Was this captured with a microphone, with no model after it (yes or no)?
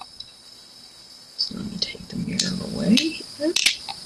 yes